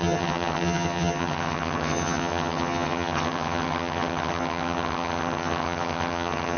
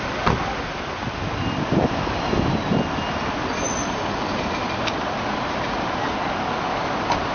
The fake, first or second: first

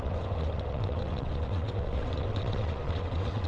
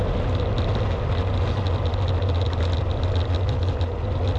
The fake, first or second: first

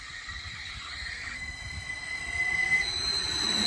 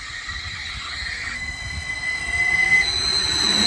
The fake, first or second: first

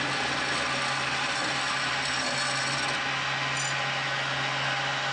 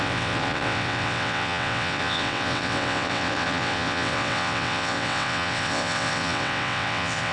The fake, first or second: second